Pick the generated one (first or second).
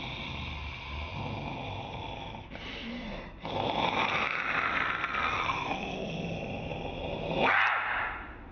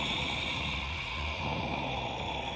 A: second